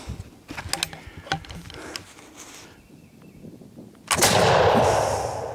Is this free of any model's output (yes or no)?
yes